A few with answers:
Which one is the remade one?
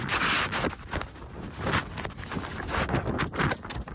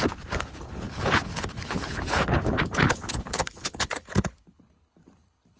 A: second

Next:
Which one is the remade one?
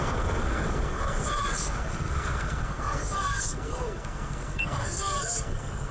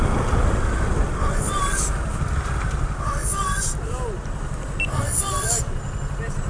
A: first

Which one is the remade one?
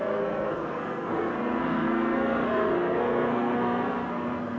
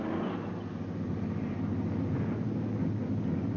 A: first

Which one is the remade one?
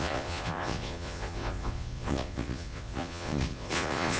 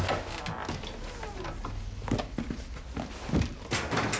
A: first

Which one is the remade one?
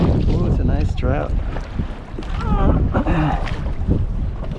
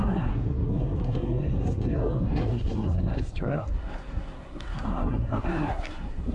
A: second